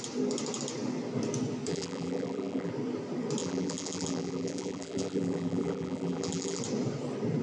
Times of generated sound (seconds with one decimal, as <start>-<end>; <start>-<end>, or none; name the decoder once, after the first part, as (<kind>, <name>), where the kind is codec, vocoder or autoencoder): 1.7-2.7 (vocoder, BigVGAN v2); 3.4-6.6